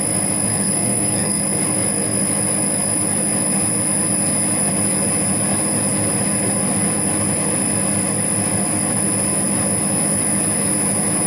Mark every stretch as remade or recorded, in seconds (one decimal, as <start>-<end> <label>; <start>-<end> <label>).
0.0-0.5 recorded; 0.5-1.4 remade; 1.4-11.3 recorded